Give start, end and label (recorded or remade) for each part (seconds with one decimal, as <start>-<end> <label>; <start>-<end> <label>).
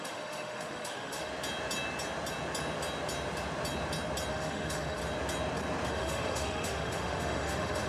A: 0.0-1.3 remade; 1.3-4.3 recorded; 4.3-5.0 remade; 5.0-5.9 recorded; 5.9-7.9 remade